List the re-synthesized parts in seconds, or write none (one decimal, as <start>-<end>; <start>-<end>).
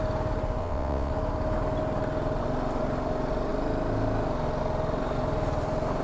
0.6-1.1